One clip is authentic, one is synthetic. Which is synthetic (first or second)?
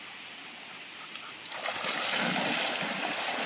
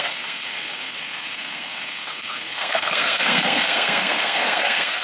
second